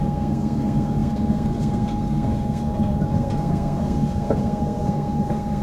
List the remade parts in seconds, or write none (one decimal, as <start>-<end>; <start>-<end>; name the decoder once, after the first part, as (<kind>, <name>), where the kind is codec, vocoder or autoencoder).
0.0-5.6 (codec, SNAC)